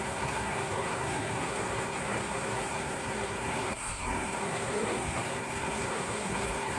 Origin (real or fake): fake